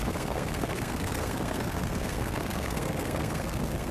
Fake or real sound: fake